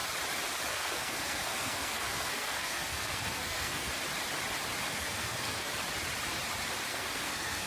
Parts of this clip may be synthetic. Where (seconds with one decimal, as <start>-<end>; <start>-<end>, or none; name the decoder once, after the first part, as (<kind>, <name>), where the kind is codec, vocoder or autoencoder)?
0.7-3.9 (codec, SNAC); 4.9-5.7; 6.9-7.7